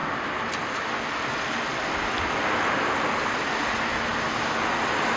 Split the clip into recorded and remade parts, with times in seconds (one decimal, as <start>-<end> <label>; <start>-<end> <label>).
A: 0.0-5.2 recorded

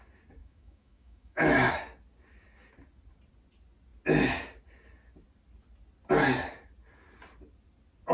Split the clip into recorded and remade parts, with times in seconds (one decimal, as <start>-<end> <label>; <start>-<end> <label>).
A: 0.0-0.4 recorded; 0.4-1.7 remade; 1.7-8.1 recorded

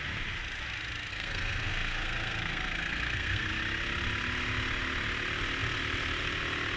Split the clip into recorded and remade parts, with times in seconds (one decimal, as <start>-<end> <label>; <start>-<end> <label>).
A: 0.0-1.1 recorded; 1.1-3.5 remade; 3.5-6.8 recorded

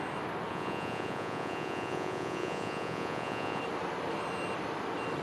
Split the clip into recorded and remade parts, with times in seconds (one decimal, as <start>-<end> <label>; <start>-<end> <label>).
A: 0.0-0.5 recorded; 0.5-3.6 remade; 3.6-5.2 recorded

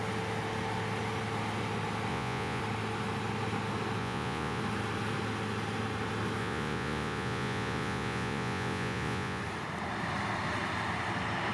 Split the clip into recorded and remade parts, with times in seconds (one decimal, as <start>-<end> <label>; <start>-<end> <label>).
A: 0.0-2.1 recorded; 2.1-2.6 remade; 2.6-4.0 recorded; 4.0-4.6 remade; 4.6-6.4 recorded; 6.4-9.4 remade; 9.4-11.5 recorded

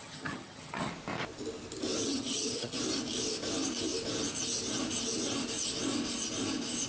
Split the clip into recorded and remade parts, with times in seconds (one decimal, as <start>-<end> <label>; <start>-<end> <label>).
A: 0.0-0.9 remade; 0.9-2.0 recorded; 2.0-2.8 remade; 2.8-6.9 recorded